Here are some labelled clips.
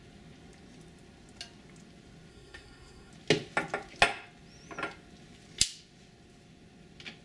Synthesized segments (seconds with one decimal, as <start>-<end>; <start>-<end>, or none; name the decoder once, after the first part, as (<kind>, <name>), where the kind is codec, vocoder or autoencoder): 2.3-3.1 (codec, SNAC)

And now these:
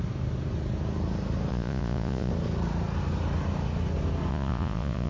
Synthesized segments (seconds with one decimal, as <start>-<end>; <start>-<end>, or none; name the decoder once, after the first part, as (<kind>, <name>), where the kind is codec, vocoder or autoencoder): 1.5-2.3 (vocoder, Vocos); 4.3-5.1

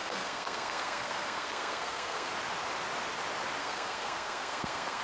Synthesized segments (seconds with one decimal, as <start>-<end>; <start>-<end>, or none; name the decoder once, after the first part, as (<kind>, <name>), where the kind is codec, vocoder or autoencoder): 0.0-2.3 (codec, SNAC); 3.6-5.0